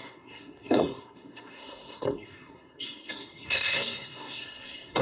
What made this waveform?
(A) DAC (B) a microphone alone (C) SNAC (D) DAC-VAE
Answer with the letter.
C